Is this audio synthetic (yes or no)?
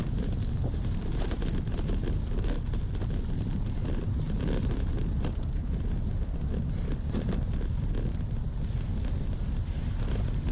no